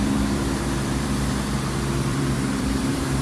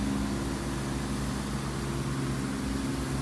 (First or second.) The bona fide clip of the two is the second